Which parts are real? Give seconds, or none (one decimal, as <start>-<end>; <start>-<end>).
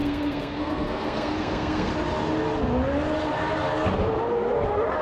1.9-5.0